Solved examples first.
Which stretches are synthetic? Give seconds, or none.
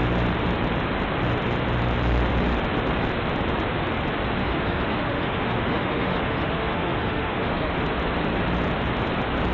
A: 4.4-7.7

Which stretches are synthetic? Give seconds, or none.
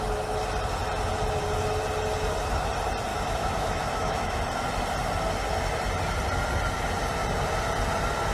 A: 3.1-4.4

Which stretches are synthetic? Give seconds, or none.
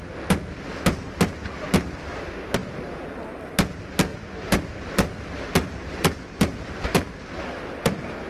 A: 4.1-4.7; 5.8-8.3